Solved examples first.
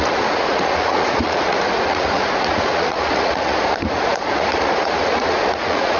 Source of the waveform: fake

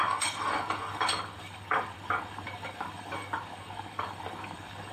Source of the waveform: fake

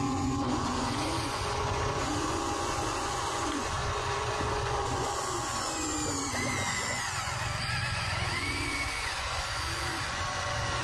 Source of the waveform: fake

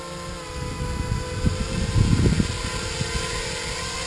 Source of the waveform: real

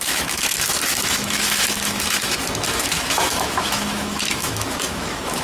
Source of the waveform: fake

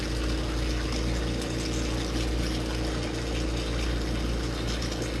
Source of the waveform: real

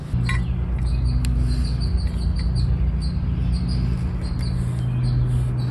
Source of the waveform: real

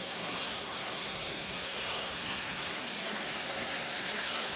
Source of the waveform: fake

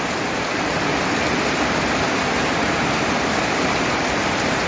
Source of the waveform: fake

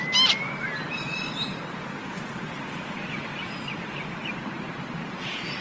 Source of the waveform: real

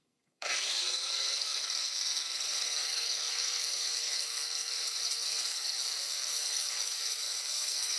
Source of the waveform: fake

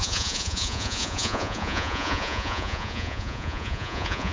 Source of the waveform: fake